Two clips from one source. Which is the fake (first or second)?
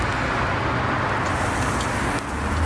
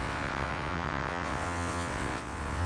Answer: second